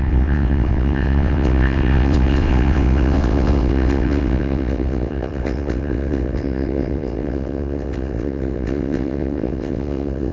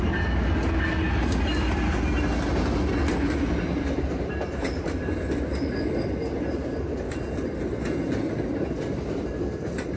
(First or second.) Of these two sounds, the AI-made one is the first